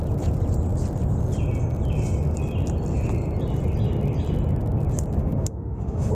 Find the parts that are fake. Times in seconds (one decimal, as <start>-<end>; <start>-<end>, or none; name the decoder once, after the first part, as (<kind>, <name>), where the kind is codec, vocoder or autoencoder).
5.2-6.1 (autoencoder, DAC-VAE)